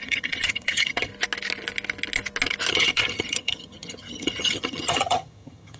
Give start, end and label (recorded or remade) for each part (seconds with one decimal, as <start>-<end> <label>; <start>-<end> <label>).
0.0-1.1 remade; 1.1-2.7 recorded; 2.7-5.8 remade